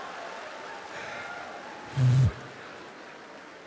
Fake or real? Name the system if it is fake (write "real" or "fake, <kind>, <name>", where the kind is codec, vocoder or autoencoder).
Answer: real